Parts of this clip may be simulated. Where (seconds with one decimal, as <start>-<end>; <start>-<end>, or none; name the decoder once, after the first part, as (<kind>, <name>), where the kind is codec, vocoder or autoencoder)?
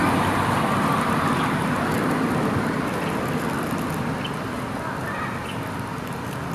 none